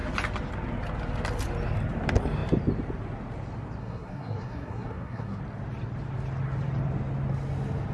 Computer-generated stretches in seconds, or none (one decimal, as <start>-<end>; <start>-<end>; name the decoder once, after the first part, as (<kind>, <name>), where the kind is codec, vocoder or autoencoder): 3.8-5.4 (codec, SNAC)